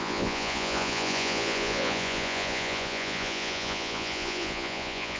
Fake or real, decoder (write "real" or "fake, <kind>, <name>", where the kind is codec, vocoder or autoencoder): fake, vocoder, Vocos